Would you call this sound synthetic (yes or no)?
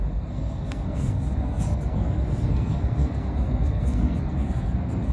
yes